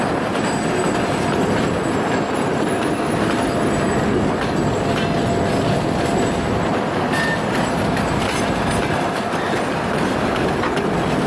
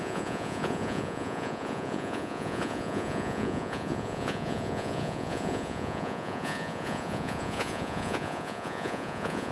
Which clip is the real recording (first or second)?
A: first